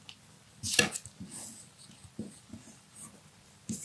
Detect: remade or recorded recorded